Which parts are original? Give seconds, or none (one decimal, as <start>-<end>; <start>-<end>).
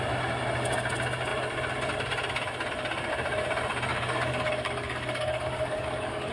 0.0-3.9